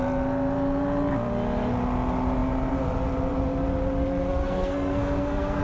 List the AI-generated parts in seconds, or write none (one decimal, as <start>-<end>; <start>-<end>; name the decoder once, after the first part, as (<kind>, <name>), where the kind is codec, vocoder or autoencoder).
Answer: 4.4-5.6 (codec, SNAC)